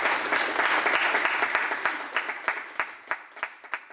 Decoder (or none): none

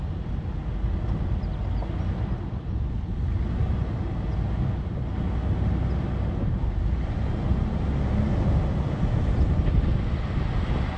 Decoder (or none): none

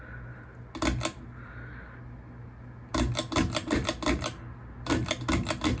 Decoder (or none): none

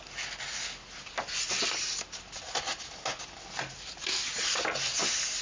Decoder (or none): none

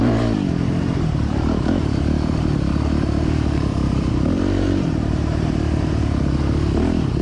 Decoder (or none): vocoder, BigVGAN v2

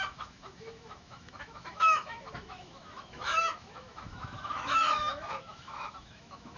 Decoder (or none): autoencoder, DAC-VAE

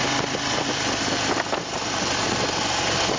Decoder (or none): none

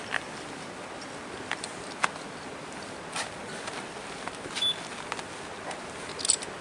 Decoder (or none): none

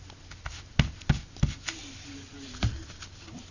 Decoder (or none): none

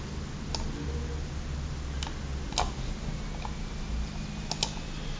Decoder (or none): none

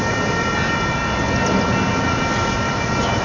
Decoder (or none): none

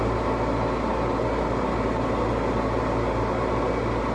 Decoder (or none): none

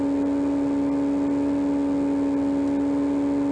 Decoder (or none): none